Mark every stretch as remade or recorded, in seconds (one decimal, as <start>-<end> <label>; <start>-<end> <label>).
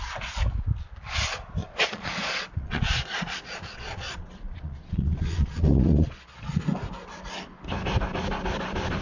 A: 0.0-1.6 recorded; 1.6-6.6 remade; 6.6-9.0 recorded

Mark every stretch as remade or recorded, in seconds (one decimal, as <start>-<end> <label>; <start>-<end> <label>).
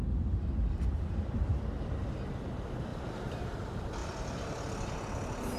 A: 0.0-2.9 recorded; 2.9-3.6 remade; 3.6-4.0 recorded; 4.0-4.6 remade; 4.6-5.6 recorded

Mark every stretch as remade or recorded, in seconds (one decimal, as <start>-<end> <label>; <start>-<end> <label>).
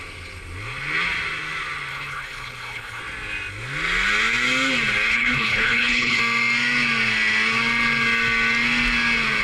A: 0.0-1.9 recorded; 1.9-3.0 remade; 3.0-5.1 recorded; 5.1-6.2 remade; 6.2-9.4 recorded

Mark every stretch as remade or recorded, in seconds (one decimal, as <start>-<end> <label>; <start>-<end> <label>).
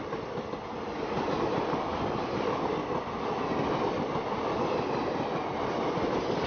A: 0.0-6.5 recorded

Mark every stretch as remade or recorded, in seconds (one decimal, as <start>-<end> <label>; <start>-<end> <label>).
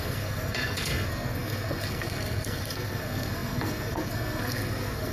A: 0.0-5.1 remade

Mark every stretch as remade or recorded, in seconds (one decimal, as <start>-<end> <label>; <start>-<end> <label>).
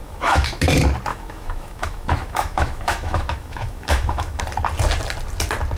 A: 0.0-0.7 remade; 0.7-1.1 recorded; 1.1-4.4 remade; 4.4-5.8 recorded